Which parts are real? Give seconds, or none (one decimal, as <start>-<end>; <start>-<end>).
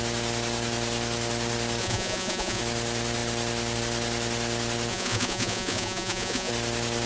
0.0-1.8; 2.6-4.9; 6.5-7.1